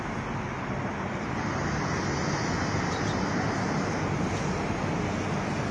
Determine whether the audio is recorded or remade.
recorded